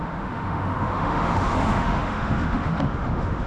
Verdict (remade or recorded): remade